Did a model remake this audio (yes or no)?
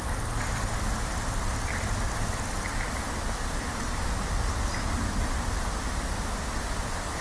no